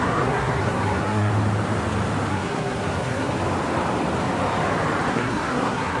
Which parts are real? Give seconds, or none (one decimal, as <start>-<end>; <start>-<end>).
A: 1.3-2.3; 3.3-5.1